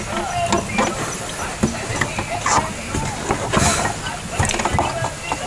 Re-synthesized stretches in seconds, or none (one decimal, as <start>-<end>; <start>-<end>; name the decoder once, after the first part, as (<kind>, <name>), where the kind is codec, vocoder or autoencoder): none